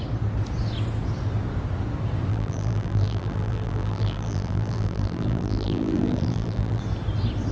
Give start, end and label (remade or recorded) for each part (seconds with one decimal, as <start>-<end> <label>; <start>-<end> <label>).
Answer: 0.0-2.3 recorded; 2.3-6.8 remade; 6.8-7.5 recorded

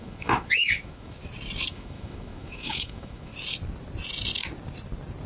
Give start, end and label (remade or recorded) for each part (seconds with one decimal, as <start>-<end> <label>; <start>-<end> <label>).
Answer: 0.0-1.2 remade; 1.2-1.7 recorded; 1.7-3.3 remade; 3.3-5.3 recorded

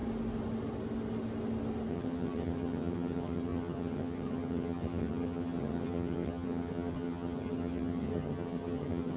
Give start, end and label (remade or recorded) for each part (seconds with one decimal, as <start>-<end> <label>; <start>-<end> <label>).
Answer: 0.0-1.9 recorded; 1.9-9.2 remade

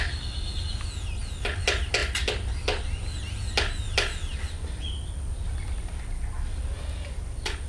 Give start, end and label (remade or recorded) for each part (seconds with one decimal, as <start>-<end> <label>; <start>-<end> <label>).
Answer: 0.0-7.7 recorded